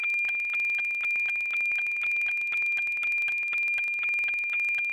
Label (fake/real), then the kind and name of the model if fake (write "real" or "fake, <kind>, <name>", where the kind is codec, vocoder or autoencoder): real